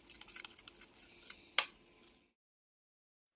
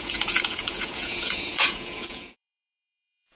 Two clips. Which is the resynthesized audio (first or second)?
second